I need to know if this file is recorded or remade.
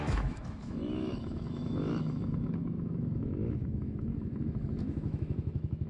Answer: remade